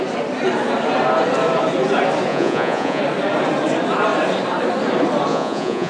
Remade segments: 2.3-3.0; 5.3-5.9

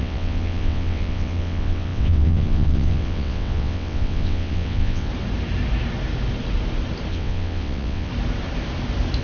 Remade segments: 0.0-5.1; 7.1-8.1